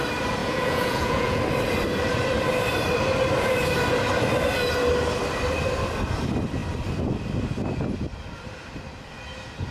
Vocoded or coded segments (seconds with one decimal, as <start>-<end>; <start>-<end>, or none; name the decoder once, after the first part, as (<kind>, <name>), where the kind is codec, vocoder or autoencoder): 0.4-1.4 (vocoder, Vocos)